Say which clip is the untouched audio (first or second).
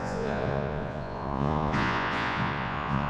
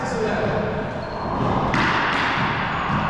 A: second